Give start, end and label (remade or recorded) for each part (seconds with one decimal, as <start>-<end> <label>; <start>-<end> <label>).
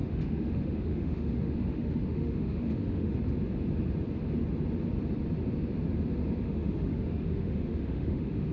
0.0-3.1 remade; 3.1-6.4 recorded; 6.4-8.5 remade